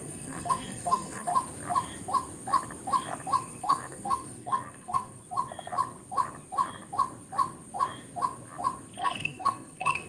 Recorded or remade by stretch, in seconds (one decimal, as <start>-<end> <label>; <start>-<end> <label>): 0.0-1.3 remade; 1.3-3.6 recorded; 3.6-5.2 remade; 5.2-9.0 recorded; 9.0-10.1 remade